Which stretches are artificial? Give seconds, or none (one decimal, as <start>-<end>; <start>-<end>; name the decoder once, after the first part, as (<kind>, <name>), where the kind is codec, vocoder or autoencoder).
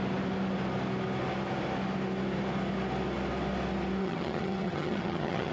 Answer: 4.0-5.5 (vocoder, HiFi-GAN)